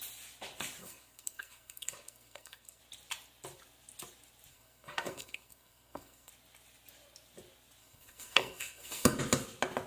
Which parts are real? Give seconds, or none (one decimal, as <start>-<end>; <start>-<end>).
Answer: 0.0-0.8; 2.8-4.5; 6.3-7.8; 9.2-9.9